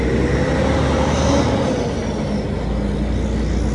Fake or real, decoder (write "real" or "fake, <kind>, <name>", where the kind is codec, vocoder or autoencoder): real